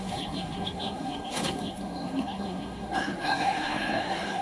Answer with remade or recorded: remade